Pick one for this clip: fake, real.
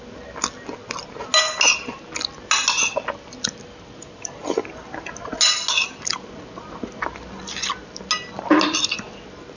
real